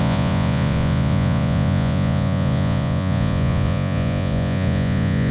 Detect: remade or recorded remade